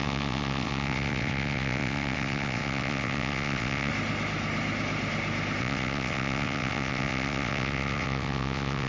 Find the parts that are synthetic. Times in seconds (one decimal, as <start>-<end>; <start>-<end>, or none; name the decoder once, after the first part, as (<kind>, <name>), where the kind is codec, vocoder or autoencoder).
0.0-3.9 (vocoder, WaveNeXt); 5.6-8.9